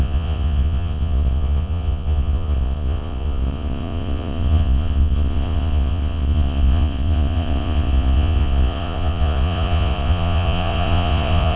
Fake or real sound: fake